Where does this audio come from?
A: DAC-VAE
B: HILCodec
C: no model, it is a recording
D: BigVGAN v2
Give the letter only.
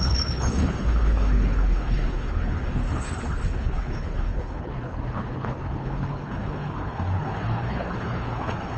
B